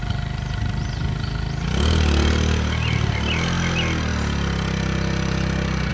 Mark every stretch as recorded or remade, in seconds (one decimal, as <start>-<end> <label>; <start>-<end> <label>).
0.0-5.9 recorded